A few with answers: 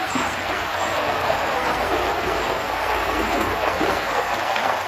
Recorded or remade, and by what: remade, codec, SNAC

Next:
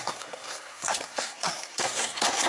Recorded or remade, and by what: remade, codec, SNAC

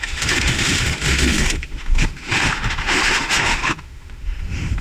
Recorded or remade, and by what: remade, autoencoder, DAC-VAE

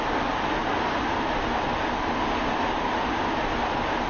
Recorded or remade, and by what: recorded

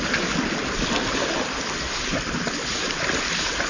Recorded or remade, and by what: recorded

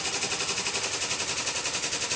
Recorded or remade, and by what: recorded